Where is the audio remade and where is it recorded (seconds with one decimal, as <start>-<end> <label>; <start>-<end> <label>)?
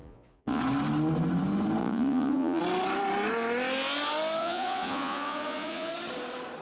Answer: 0.0-0.6 remade; 0.6-1.8 recorded; 1.8-2.6 remade; 2.6-4.4 recorded; 4.4-5.9 remade; 5.9-6.6 recorded